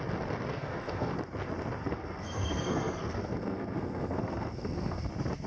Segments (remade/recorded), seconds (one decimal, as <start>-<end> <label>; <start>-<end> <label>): 0.0-0.5 recorded; 0.5-1.1 remade; 1.1-1.8 recorded; 1.8-5.1 remade; 5.1-5.5 recorded